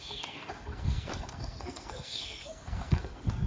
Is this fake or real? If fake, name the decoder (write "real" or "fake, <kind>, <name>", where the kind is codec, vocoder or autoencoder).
fake, codec, SNAC